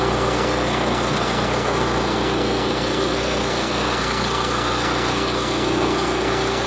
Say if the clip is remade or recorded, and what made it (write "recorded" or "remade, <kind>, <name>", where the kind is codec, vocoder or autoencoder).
remade, codec, SNAC